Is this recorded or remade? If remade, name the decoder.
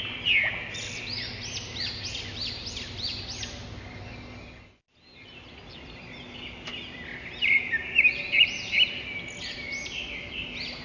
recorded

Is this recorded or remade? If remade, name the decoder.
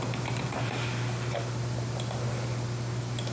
recorded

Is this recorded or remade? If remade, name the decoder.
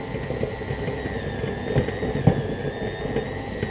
recorded